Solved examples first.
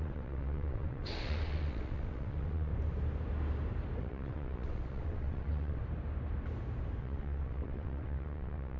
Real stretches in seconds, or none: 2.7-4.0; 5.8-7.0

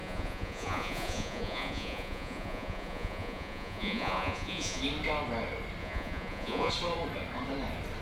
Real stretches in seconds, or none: 4.8-5.8; 6.7-8.0

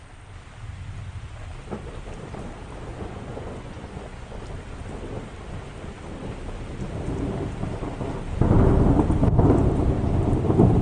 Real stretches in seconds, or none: 0.0-2.9; 4.4-10.8

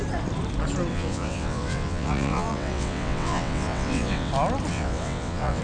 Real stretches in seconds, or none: 0.0-0.9; 4.3-4.7

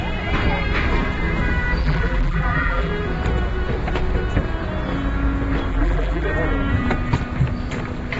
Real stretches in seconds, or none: 0.0-1.8; 2.9-5.7; 6.3-8.2

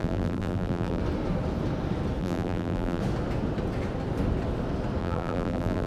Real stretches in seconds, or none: 1.0-2.2; 3.0-5.0